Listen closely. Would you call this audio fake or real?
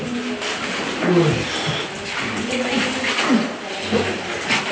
real